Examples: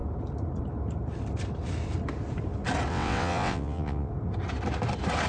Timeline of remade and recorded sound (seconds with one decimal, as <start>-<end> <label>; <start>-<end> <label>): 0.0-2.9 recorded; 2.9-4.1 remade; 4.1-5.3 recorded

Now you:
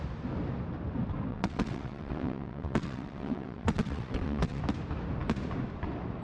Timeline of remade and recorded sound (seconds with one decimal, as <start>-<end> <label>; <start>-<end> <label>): 0.0-1.3 recorded; 1.3-4.6 remade; 4.6-6.2 recorded

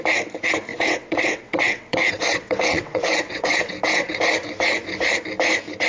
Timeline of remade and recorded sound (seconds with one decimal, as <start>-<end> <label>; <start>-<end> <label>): 0.0-0.7 recorded; 0.7-4.2 remade; 4.2-5.9 recorded